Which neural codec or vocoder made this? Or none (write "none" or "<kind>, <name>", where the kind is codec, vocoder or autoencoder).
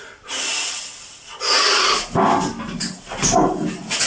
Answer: none